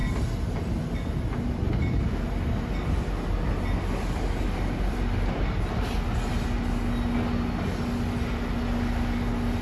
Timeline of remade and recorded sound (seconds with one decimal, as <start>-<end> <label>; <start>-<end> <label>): 0.0-9.6 recorded